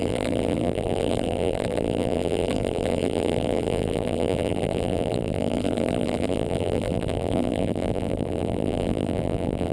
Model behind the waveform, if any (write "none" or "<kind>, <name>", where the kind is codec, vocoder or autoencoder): vocoder, BigVGAN v2